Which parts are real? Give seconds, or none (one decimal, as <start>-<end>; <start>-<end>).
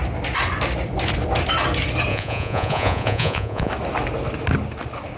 0.0-2.1; 3.7-5.2